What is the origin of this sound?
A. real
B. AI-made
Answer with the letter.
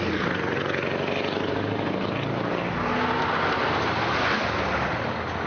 A